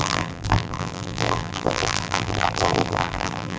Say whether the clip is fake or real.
fake